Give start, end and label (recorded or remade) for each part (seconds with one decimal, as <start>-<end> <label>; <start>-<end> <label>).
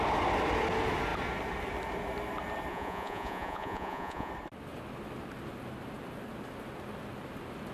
0.0-2.7 recorded; 2.7-4.3 remade; 4.3-7.7 recorded